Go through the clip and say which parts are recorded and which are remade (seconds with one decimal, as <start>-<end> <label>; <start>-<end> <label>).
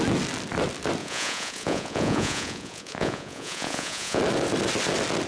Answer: 0.0-1.0 recorded; 1.0-4.2 remade; 4.2-5.3 recorded